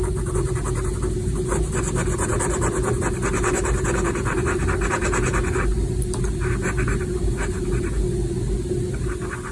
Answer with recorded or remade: recorded